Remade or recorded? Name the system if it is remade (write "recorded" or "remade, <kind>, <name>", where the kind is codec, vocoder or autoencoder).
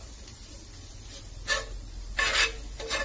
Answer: recorded